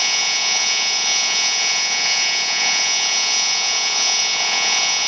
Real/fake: fake